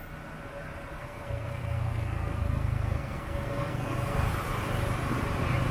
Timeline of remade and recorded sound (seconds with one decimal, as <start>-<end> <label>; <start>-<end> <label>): 0.0-0.9 recorded; 0.9-4.3 remade; 4.3-5.7 recorded